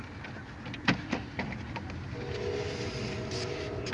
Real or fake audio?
real